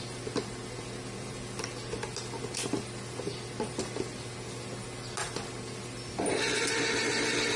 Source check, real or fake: real